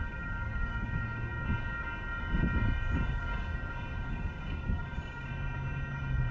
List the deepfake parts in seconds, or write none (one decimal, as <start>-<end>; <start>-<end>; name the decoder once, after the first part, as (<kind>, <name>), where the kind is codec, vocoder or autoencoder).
0.0-1.3 (codec, DAC); 3.1-3.5; 4.0-5.3